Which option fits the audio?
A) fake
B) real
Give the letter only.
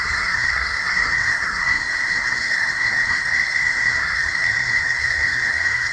A